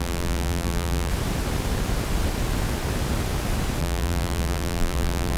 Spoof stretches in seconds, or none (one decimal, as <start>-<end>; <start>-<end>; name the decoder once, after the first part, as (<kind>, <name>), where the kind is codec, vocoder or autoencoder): 0.0-1.1 (vocoder, BigVGAN v2); 3.8-5.4